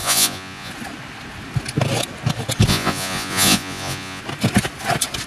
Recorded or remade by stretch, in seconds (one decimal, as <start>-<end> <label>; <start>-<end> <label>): 0.0-0.7 remade; 0.7-2.7 recorded; 2.7-4.2 remade; 4.2-5.3 recorded